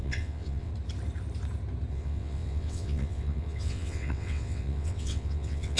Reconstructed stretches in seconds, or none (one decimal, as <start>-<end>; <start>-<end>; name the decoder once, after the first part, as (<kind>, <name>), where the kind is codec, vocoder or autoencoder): 0.0-0.7 (vocoder, WaveNeXt); 1.9-5.8